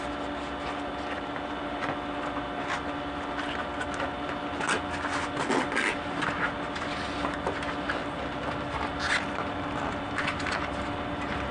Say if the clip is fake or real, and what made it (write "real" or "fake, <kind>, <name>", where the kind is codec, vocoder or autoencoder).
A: real